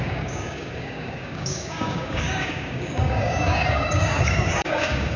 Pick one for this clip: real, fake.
fake